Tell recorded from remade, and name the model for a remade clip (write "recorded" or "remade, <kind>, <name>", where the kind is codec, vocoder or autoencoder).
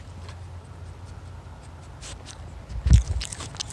recorded